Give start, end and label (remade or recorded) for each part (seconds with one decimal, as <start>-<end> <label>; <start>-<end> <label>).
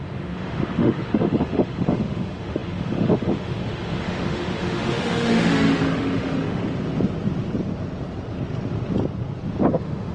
0.0-6.6 remade; 6.6-9.7 recorded; 9.7-10.1 remade